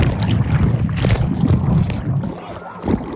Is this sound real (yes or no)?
yes